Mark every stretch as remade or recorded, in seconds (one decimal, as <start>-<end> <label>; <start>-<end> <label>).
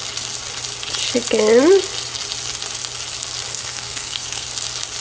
0.0-3.5 recorded; 3.5-4.5 remade; 4.5-5.0 recorded